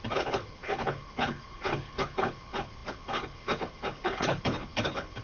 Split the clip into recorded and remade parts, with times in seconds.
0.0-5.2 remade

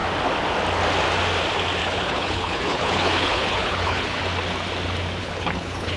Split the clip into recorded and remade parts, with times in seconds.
0.0-1.8 recorded; 1.8-4.2 remade; 4.2-5.2 recorded; 5.2-6.0 remade